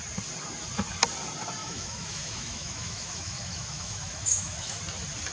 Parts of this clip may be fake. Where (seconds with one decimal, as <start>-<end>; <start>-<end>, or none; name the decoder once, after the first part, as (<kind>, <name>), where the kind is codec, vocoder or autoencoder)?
1.6-4.8 (autoencoder, DAC-VAE)